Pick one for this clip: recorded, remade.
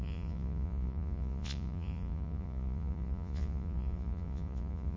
remade